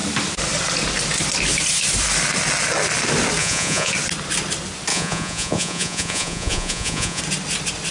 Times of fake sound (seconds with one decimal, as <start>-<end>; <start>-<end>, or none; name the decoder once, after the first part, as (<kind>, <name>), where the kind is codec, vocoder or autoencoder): 3.4-3.9 (vocoder, Vocos); 4.9-7.2